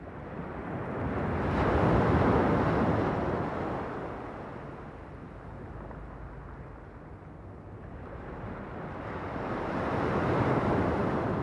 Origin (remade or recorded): recorded